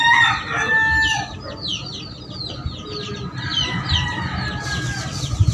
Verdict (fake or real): real